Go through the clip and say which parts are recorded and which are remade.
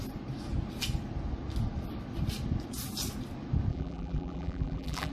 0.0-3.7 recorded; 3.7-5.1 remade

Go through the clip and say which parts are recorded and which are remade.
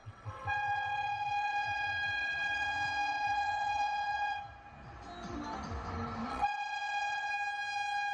0.0-4.4 remade; 4.4-6.3 recorded; 6.3-7.3 remade; 7.3-8.1 recorded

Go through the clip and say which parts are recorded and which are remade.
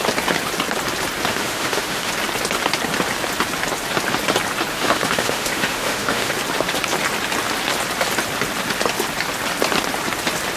0.0-1.3 recorded; 1.3-2.1 remade; 2.1-4.7 recorded; 4.7-6.3 remade; 6.3-10.6 recorded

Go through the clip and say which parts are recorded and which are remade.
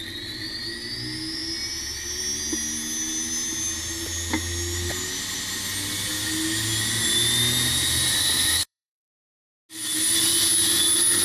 0.0-8.2 recorded; 8.2-9.2 remade; 9.2-11.2 recorded